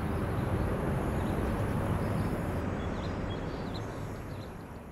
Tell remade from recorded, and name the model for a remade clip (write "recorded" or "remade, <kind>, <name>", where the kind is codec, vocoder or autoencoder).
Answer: remade, vocoder, BigVGAN v2